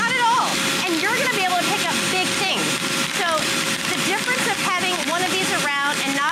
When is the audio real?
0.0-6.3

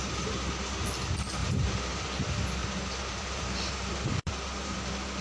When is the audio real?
0.0-1.4; 2.0-2.6; 4.8-5.2

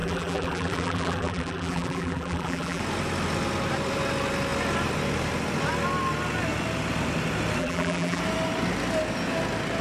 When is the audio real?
2.8-7.6; 8.2-9.8

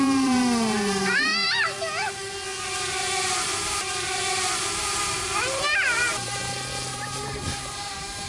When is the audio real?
1.3-2.6; 6.4-6.9

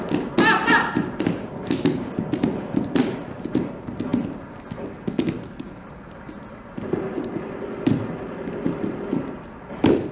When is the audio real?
0.0-0.6; 1.5-10.1

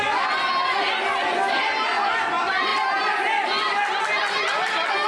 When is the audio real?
0.0-5.1

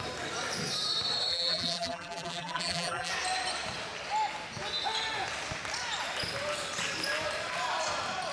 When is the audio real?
0.0-1.3; 3.1-8.3

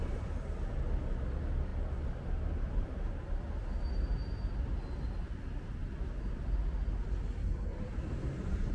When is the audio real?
0.0-7.7